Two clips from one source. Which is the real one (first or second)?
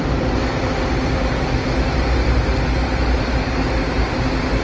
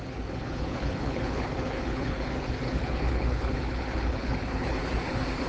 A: first